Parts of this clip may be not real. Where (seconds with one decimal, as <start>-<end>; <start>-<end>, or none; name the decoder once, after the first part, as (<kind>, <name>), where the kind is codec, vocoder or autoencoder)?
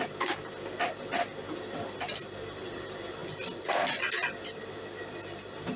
none